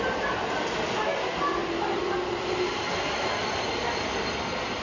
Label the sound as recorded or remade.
recorded